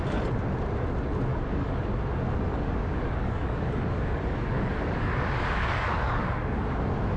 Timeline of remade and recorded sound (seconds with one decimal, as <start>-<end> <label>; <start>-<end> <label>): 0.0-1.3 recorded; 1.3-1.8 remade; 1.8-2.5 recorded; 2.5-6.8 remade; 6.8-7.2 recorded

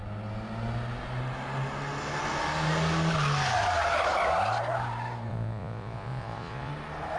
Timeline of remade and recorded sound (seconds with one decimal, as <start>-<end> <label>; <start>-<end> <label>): 0.0-5.3 recorded; 5.3-6.7 remade; 6.7-7.2 recorded

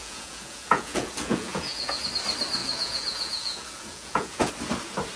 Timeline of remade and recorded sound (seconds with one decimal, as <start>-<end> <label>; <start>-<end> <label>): 0.0-2.1 remade; 2.1-2.6 recorded; 2.6-4.5 remade; 4.5-5.2 recorded